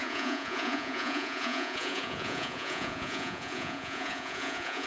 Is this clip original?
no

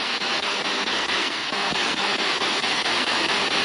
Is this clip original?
no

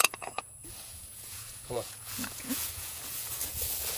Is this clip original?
no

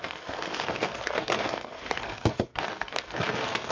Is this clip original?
no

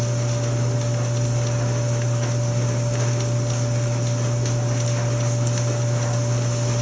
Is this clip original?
yes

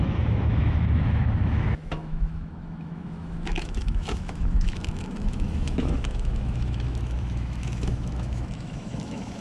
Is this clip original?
no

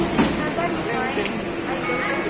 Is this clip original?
yes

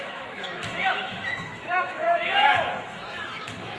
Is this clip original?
no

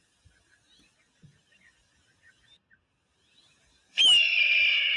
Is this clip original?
yes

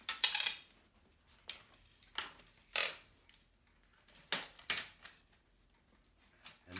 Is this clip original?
yes